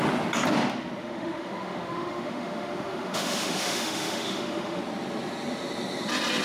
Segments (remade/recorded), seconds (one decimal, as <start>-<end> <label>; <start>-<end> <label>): 0.0-1.0 recorded; 1.0-4.8 remade; 4.8-6.4 recorded